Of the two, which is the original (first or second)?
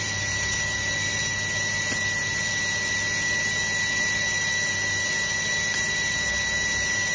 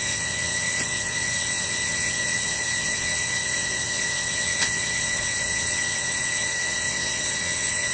first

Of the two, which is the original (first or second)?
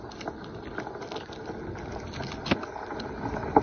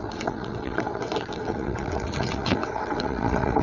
first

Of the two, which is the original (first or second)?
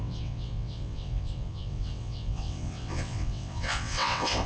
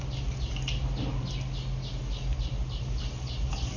second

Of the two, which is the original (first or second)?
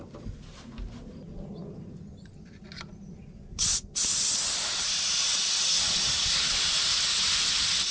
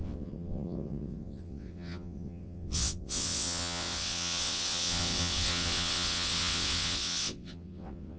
first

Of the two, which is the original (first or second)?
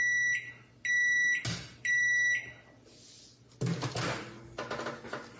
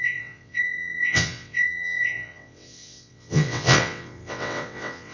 first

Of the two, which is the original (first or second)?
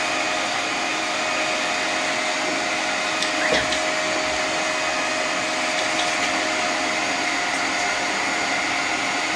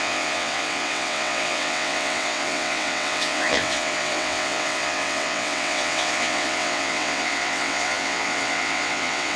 first